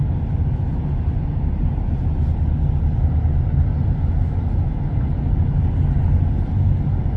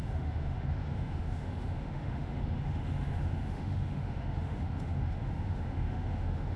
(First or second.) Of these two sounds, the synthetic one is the second